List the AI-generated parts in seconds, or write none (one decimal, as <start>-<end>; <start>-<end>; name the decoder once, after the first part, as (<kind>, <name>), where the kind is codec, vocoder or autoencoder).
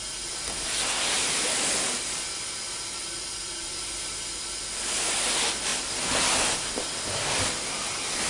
none